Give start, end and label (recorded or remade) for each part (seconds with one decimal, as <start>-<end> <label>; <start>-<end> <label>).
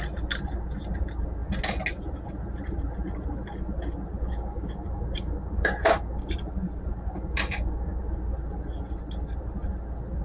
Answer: 0.0-4.3 recorded; 4.3-6.3 remade; 6.3-7.1 recorded; 7.1-8.0 remade; 8.0-10.2 recorded